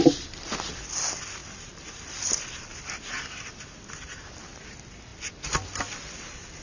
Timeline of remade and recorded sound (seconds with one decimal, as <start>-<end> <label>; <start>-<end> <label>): 0.0-6.6 recorded